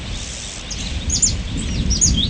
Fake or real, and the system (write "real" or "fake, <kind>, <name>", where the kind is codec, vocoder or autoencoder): real